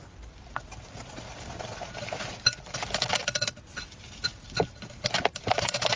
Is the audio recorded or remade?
recorded